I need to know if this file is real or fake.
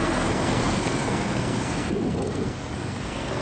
fake